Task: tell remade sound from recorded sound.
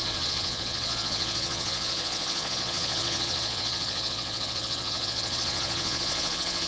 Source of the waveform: remade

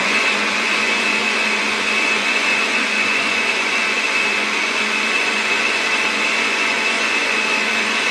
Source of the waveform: remade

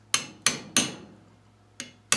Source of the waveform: recorded